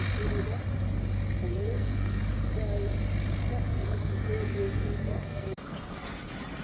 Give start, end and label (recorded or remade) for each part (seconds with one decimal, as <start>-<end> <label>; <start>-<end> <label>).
0.0-1.5 recorded; 1.5-2.2 remade; 2.2-3.7 recorded; 3.7-5.9 remade; 5.9-6.6 recorded